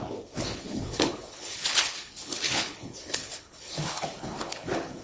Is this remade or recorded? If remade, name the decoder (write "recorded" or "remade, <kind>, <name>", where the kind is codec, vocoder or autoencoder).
remade, codec, HILCodec